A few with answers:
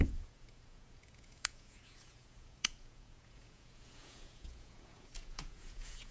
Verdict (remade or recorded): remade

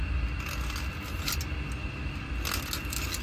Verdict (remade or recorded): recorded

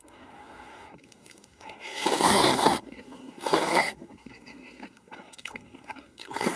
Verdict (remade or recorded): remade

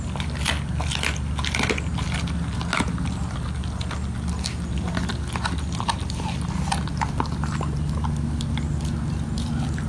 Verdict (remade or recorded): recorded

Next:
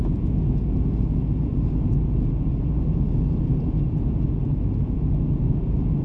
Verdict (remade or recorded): remade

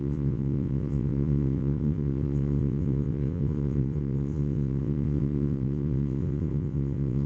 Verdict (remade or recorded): remade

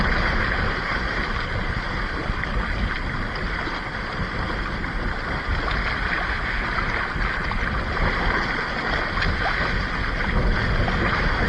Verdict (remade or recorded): recorded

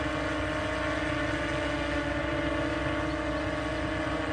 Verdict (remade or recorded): recorded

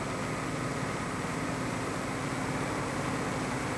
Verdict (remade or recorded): recorded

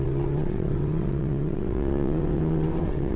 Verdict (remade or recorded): remade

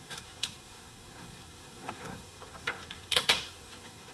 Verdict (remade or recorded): remade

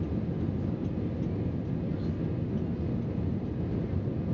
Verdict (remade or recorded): recorded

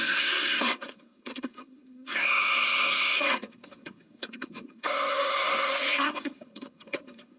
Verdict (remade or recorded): remade